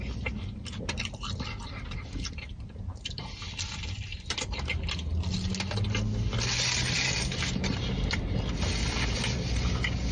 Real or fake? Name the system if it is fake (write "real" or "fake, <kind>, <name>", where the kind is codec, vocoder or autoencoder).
real